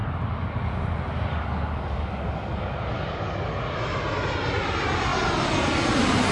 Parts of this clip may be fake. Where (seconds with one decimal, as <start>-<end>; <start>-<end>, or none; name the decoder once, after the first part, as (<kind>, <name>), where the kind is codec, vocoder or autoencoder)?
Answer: 1.3-3.6 (codec, DAC)